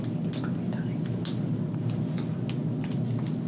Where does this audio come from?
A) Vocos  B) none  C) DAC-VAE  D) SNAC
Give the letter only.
B